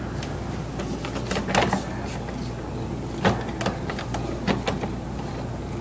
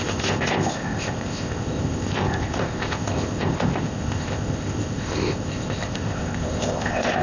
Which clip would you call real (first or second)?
first